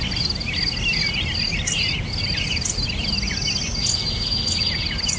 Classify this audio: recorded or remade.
recorded